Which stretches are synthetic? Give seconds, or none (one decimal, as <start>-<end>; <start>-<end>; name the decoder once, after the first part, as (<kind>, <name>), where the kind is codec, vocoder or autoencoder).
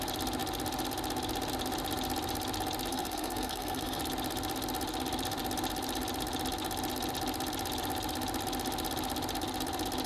2.9-4.0 (codec, SNAC)